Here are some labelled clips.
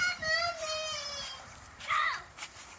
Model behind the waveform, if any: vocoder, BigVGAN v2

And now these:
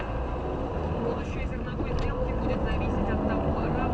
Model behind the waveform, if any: none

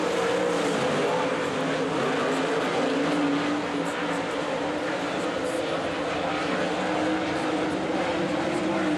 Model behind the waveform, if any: none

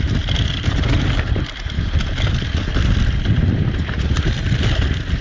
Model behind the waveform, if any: none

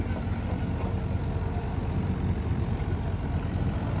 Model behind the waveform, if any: none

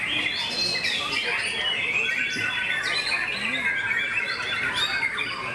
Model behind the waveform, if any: none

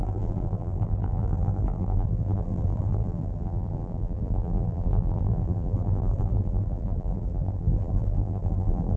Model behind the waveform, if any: vocoder, BigVGAN v2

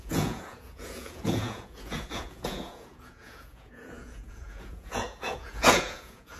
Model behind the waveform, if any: vocoder, Vocos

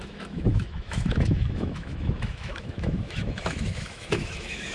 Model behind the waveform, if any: autoencoder, DAC-VAE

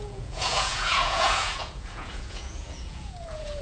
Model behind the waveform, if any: vocoder, Vocos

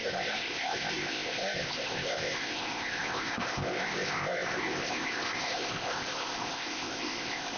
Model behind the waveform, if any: codec, ZipCodec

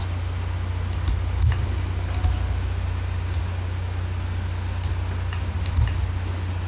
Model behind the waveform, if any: none